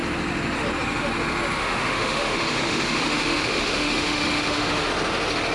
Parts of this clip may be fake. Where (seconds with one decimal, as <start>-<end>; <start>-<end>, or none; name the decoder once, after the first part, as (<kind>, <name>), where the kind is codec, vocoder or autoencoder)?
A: 1.6-4.9 (autoencoder, DAC-VAE)